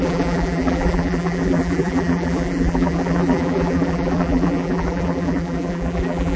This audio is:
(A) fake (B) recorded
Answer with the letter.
A